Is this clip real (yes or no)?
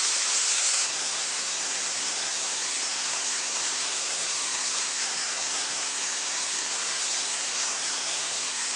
no